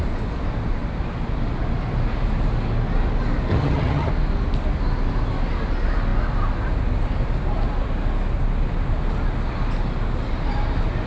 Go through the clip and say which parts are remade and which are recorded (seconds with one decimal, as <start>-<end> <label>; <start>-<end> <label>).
0.0-3.5 recorded; 3.5-4.1 remade; 4.1-11.1 recorded